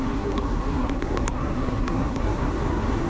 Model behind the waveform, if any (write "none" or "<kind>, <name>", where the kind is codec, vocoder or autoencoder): codec, SNAC